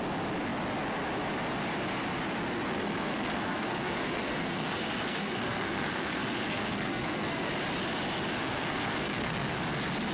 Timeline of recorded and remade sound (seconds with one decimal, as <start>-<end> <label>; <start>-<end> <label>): 0.0-2.7 recorded; 2.7-7.5 remade; 7.5-8.4 recorded; 8.4-9.6 remade; 9.6-10.1 recorded